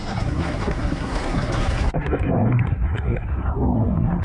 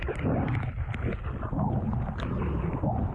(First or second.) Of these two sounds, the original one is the second